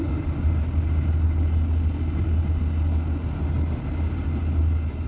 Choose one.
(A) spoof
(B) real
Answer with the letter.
B